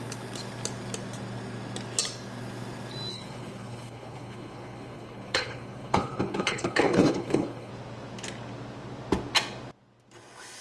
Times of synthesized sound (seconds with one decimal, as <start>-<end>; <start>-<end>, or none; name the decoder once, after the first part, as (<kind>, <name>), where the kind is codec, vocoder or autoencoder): 3.1-7.7 (codec, HILCodec)